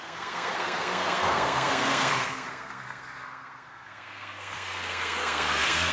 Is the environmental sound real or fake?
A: fake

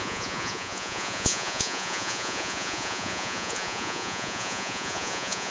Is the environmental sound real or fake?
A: fake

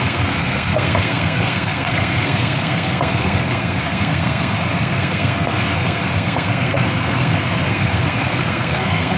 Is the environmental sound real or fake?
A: fake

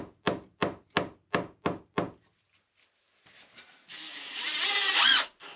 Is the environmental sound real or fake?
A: real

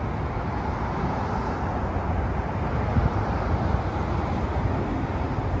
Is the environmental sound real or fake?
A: real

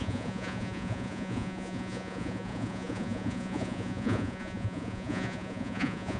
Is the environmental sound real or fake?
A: fake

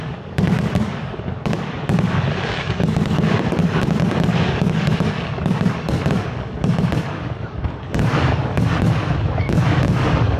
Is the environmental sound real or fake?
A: fake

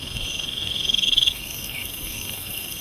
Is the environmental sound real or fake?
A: fake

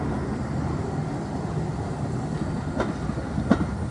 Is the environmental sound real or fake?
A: real